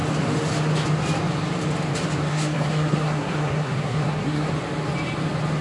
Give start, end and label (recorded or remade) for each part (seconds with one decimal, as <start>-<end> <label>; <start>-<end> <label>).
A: 0.0-2.3 recorded; 2.3-4.5 remade; 4.5-5.6 recorded